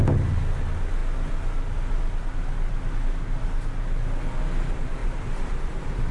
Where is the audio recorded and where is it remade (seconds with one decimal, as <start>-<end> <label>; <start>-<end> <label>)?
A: 0.0-5.0 recorded; 5.0-6.1 remade